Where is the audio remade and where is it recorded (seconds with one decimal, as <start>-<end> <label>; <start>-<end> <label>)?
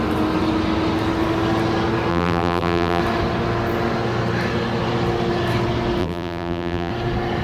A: 0.0-2.1 recorded; 2.1-3.0 remade; 3.0-6.0 recorded; 6.0-6.9 remade; 6.9-7.4 recorded